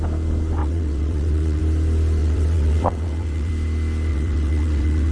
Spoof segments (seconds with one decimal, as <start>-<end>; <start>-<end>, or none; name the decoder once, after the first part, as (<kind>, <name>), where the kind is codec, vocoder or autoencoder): 0.6-1.6 (vocoder, WaveNeXt); 2.2-3.5; 4.1-5.1